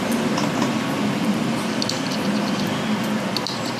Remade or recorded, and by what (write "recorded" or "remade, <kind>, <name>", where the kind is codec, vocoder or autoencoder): remade, vocoder, BigVGAN v2